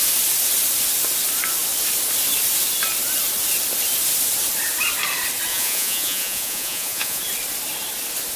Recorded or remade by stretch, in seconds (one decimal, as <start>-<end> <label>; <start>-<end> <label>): 0.0-5.5 recorded; 5.5-7.2 remade; 7.2-8.4 recorded